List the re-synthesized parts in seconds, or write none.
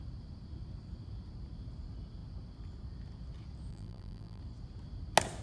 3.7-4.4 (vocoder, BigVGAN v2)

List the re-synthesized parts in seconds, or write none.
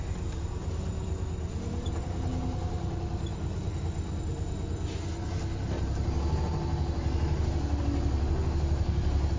none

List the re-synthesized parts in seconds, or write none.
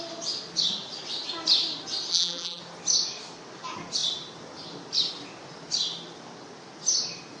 2.1-2.6 (vocoder, BigVGAN v2)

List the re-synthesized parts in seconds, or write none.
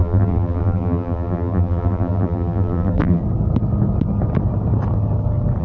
0.0-3.2 (vocoder, BigVGAN v2)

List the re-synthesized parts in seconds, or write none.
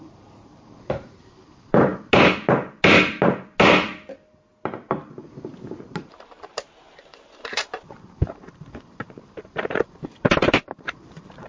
0.0-1.9 (vocoder, BigVGAN v2); 6.0-11.5